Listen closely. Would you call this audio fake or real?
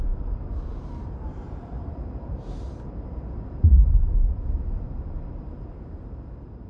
fake